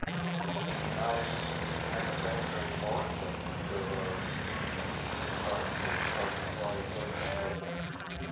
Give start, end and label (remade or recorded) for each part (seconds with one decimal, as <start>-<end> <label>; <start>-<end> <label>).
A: 0.0-0.7 remade; 0.7-7.5 recorded; 7.5-8.3 remade